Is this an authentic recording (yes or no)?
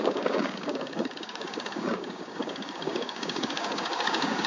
no